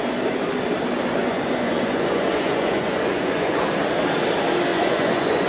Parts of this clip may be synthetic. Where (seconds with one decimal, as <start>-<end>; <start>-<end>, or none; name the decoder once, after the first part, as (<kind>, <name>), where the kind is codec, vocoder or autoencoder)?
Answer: 1.2-3.7 (vocoder, Vocos); 4.7-5.5